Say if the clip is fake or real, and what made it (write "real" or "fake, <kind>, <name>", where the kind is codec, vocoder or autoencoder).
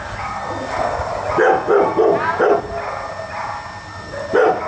real